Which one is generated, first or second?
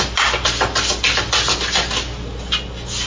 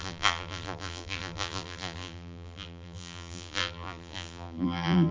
second